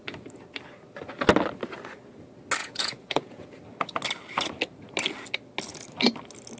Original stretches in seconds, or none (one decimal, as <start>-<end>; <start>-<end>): 0.0-2.6; 3.6-6.6